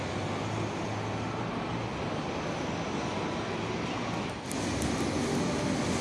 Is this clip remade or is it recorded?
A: recorded